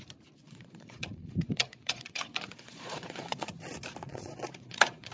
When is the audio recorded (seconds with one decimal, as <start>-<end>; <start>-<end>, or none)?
0.0-0.4; 3.5-4.0